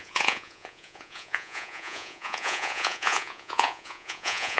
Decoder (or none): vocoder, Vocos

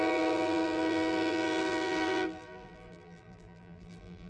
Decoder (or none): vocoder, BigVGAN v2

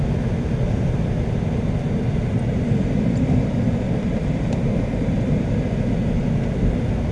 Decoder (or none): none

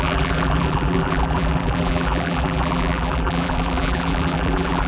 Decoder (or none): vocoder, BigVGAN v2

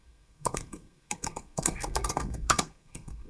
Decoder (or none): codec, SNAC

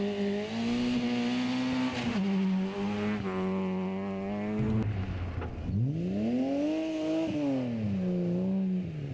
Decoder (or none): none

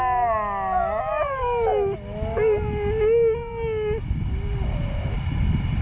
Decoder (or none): none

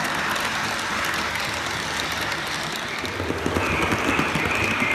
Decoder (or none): none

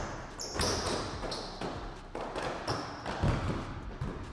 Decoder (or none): none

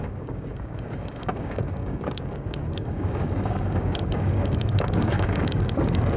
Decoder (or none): codec, DAC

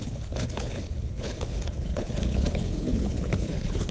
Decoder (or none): codec, HILCodec